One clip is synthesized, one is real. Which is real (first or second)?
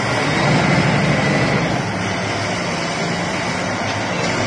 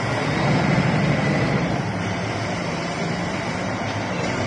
first